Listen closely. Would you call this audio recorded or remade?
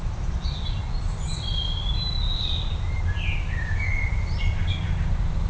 recorded